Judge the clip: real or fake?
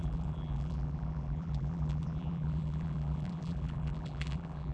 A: fake